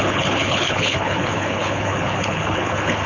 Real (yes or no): no